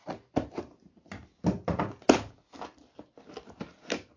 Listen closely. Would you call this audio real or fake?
real